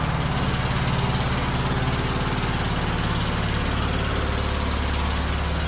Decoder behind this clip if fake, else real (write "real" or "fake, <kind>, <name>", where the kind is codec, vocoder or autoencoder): real